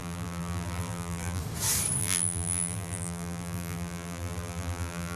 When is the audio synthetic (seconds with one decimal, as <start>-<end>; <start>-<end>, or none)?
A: 0.0-1.4; 2.0-5.2